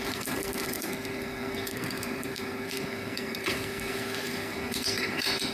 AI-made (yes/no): yes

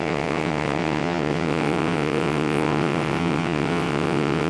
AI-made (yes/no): yes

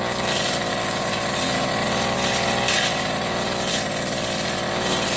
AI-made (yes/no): no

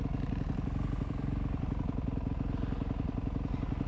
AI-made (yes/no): yes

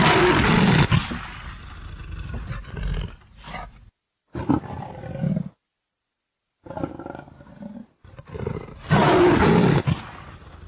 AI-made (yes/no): no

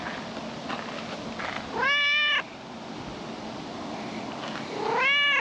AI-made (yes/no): no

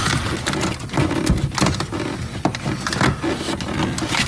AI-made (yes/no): no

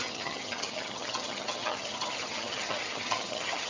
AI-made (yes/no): yes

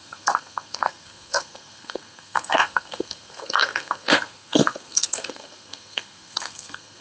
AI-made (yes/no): yes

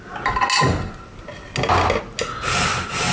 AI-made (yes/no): no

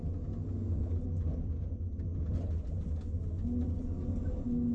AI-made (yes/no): no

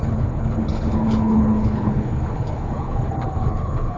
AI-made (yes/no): yes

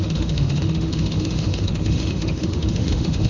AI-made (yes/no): yes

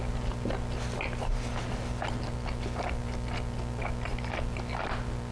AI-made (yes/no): no